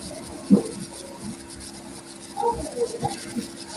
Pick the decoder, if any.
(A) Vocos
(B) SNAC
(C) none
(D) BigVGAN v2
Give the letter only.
C